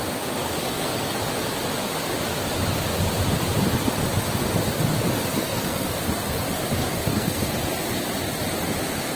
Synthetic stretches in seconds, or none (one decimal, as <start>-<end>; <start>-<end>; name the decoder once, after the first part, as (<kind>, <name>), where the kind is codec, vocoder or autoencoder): 0.4-1.2 (codec, SNAC); 5.3-5.9; 6.8-7.5